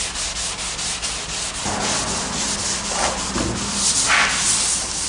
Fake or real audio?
real